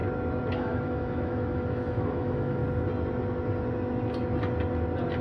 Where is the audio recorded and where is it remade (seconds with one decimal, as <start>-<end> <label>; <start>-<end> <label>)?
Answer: 0.0-0.6 recorded; 0.6-2.6 remade; 2.6-5.2 recorded